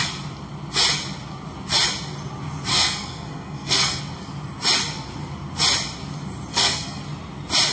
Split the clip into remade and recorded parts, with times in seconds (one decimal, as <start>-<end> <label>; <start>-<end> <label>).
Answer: 0.0-2.7 recorded; 2.7-4.0 remade; 4.0-6.5 recorded; 6.5-7.0 remade; 7.0-7.7 recorded